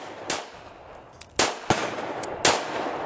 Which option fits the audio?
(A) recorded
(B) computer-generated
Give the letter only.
A